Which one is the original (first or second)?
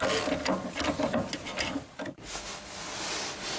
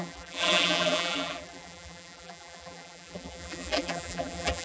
first